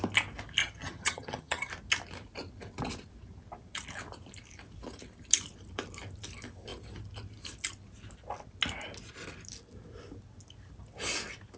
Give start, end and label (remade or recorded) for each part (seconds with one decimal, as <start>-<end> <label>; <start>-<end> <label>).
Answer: 0.0-0.6 recorded; 0.6-1.7 remade; 1.7-11.6 recorded